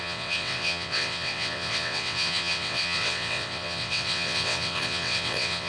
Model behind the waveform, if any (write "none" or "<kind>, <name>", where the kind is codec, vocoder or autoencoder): vocoder, WaveNeXt